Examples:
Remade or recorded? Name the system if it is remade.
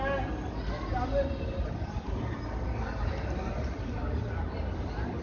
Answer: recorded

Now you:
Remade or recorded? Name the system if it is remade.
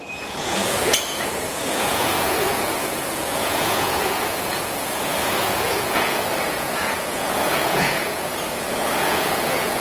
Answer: remade, vocoder, Vocos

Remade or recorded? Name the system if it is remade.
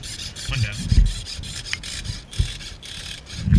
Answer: recorded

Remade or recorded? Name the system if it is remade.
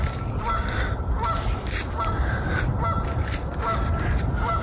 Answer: recorded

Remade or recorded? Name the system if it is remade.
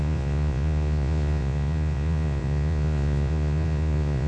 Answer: remade, vocoder, Vocos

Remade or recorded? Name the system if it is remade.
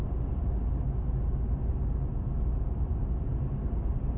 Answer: recorded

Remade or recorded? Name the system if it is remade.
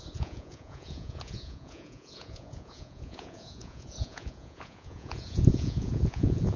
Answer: remade, vocoder, Vocos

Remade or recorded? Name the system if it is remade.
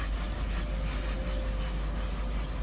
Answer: recorded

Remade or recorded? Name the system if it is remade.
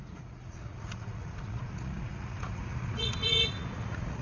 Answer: remade, vocoder, Vocos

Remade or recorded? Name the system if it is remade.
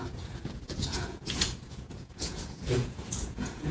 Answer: remade, vocoder, Vocos